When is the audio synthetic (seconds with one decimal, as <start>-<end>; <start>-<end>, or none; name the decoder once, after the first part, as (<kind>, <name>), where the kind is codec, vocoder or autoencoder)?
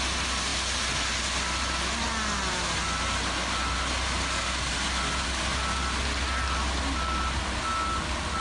none